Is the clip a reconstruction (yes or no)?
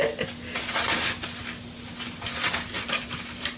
no